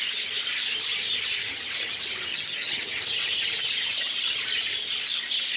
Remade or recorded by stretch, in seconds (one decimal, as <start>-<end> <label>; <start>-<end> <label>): 0.0-2.3 recorded; 2.3-2.9 remade; 2.9-5.6 recorded